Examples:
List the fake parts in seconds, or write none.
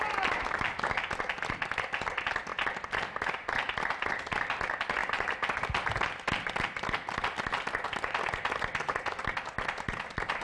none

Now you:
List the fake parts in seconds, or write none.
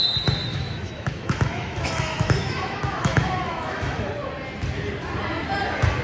0.5-4.1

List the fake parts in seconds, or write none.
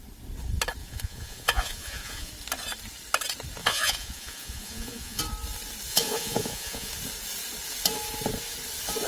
0.8-2.3; 3.6-5.2; 5.9-6.9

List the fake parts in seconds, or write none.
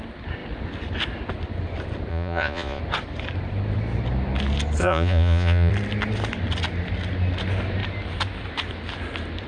2.1-2.8; 4.8-5.7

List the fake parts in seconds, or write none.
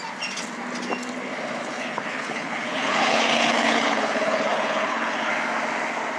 1.6-5.3